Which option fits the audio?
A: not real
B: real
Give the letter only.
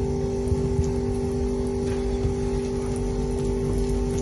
B